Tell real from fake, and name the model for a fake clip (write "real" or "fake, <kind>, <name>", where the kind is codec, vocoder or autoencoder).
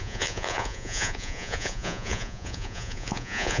fake, vocoder, Vocos